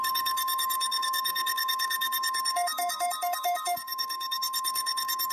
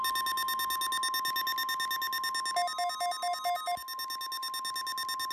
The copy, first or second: first